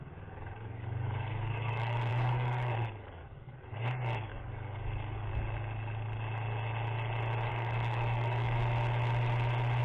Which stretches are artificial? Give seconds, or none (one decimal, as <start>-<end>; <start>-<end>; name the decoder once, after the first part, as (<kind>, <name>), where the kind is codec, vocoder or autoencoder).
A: 0.0-5.3 (codec, DAC); 7.5-8.6